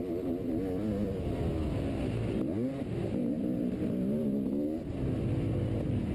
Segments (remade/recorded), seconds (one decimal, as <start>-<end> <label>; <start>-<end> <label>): 0.0-1.3 remade; 1.3-3.2 recorded; 3.2-4.5 remade; 4.5-6.1 recorded